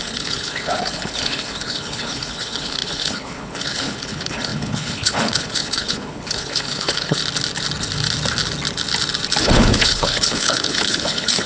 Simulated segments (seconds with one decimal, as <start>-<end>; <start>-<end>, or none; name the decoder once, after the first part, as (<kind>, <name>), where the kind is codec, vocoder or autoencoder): 0.0-7.2 (codec, HILCodec); 9.4-11.5